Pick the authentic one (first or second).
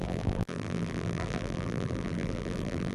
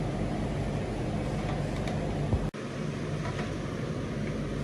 second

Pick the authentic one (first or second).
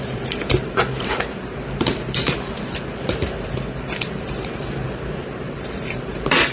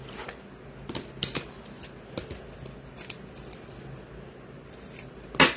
second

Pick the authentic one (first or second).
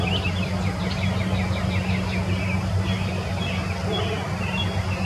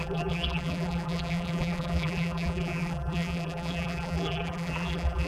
first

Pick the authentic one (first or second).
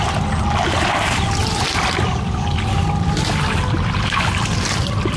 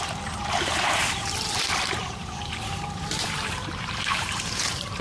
first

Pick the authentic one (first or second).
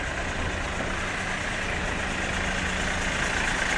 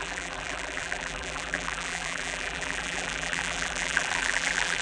first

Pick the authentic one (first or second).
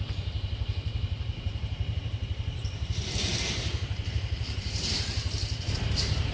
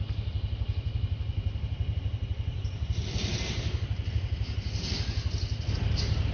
second